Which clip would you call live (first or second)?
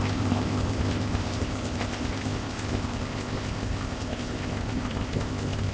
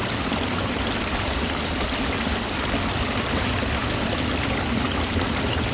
second